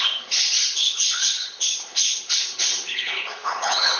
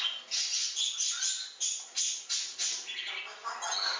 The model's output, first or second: first